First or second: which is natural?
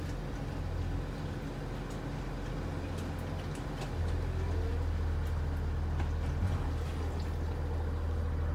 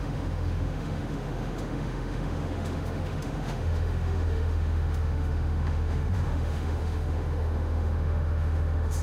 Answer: first